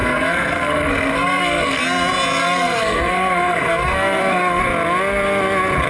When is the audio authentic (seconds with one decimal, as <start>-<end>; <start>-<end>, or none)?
1.8-2.4; 4.6-5.9